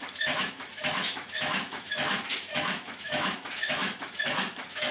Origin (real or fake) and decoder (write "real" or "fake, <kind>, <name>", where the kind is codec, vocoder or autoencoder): fake, autoencoder, DAC-VAE